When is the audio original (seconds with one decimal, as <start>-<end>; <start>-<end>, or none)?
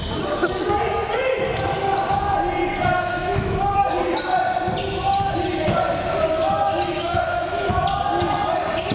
0.0-2.6; 3.9-6.7; 7.7-8.9